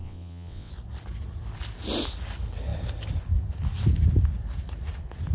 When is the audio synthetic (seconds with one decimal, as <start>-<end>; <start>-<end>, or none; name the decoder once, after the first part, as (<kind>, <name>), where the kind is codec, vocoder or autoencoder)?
0.0-0.7 (vocoder, WaveNeXt)